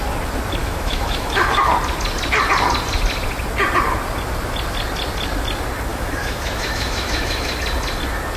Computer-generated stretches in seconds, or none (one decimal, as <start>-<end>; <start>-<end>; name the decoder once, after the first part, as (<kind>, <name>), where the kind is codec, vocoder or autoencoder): 0.6-1.7 (autoencoder, DAC-VAE); 5.9-7.5